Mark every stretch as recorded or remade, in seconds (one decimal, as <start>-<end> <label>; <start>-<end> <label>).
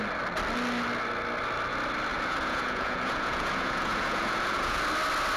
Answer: 0.0-2.1 recorded; 2.1-4.8 remade; 4.8-5.4 recorded